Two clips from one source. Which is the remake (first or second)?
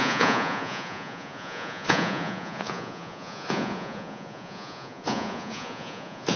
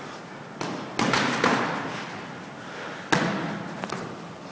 first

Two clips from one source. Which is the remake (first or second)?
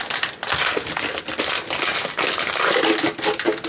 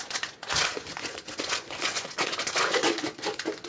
second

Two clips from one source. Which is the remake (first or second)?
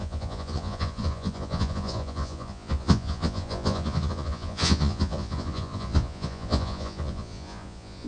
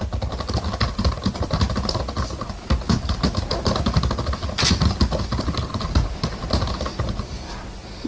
first